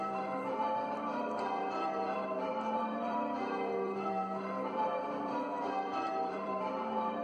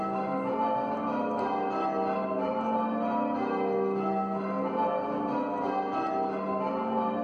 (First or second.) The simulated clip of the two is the first